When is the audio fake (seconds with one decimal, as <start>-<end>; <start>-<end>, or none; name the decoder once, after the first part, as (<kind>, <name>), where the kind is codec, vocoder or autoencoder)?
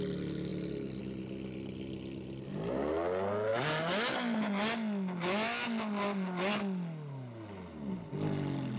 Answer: none